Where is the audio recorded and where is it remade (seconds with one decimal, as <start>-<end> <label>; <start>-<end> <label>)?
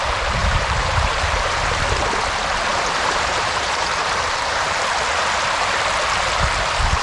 0.0-0.4 recorded; 0.4-1.2 remade; 1.2-2.7 recorded; 2.7-4.8 remade; 4.8-7.0 recorded